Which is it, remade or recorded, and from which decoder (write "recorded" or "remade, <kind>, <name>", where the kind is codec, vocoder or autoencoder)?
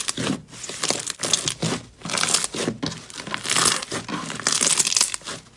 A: recorded